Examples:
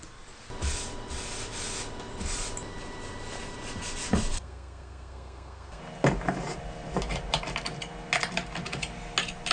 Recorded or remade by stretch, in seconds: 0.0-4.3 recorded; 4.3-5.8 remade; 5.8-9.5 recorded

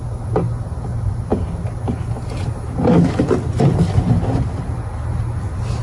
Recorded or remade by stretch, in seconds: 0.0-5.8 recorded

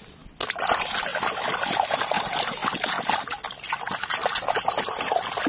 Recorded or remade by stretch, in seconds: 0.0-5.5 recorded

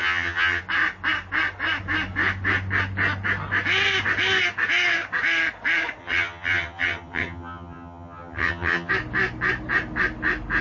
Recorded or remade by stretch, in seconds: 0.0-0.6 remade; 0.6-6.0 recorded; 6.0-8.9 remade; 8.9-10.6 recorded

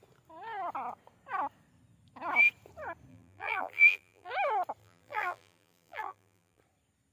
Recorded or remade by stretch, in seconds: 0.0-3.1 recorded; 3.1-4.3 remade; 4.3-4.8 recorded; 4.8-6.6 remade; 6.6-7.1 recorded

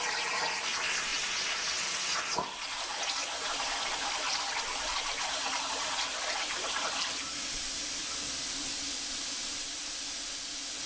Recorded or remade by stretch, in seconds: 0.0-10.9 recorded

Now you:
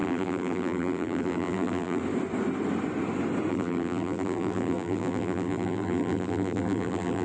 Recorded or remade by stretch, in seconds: 0.0-2.0 remade; 2.0-3.5 recorded; 3.5-7.2 remade